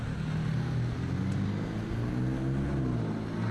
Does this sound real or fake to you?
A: real